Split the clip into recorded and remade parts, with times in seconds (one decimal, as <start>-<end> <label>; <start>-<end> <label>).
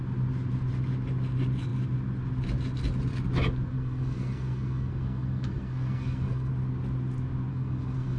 0.0-3.7 recorded; 3.7-6.5 remade; 6.5-7.5 recorded; 7.5-8.2 remade